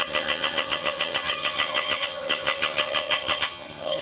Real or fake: fake